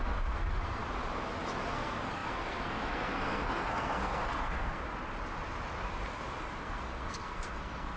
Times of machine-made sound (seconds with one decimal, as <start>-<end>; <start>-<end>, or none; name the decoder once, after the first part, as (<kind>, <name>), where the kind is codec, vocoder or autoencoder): 0.0-0.8 (codec, SNAC); 1.7-4.8; 6.6-8.0